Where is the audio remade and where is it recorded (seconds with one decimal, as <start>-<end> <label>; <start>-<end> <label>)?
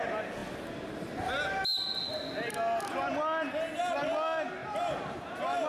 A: 0.0-4.6 recorded; 4.6-5.2 remade; 5.2-5.7 recorded